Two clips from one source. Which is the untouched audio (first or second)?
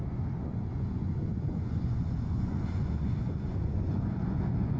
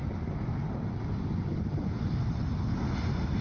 second